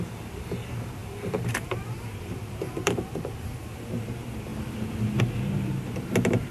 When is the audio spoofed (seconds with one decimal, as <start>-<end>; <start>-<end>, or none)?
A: 1.0-3.7